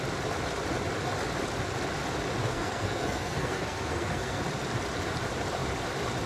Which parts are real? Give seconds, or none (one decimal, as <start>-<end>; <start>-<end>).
0.0-2.4; 4.4-6.3